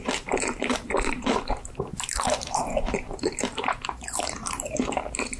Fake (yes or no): yes